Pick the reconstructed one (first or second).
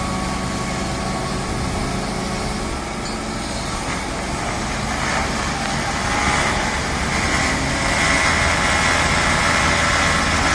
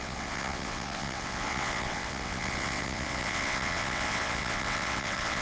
second